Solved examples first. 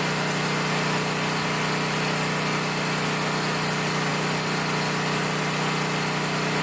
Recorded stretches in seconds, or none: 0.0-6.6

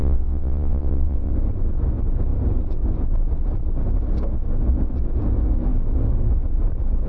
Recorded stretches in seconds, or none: 1.3-7.1

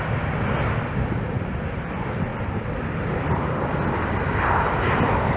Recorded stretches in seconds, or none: 0.0-5.4

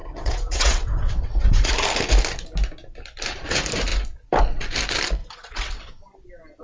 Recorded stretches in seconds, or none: 1.7-5.2; 5.9-6.6